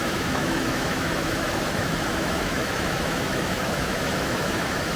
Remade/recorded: remade